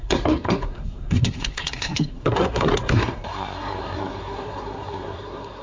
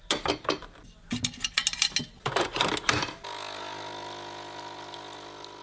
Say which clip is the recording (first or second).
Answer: second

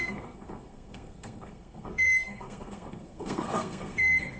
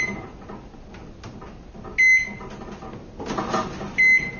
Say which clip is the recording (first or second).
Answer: second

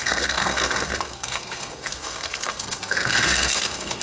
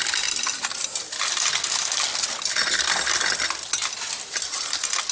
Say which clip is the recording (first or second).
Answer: second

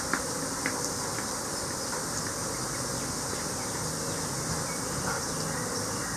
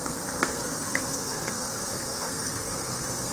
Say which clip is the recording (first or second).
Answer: first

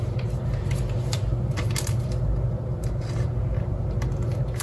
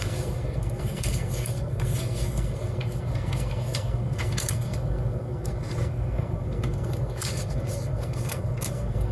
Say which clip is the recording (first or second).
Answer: first